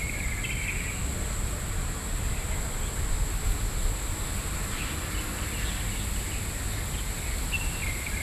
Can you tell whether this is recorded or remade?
recorded